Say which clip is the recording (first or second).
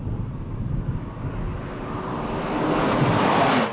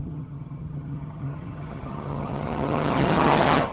first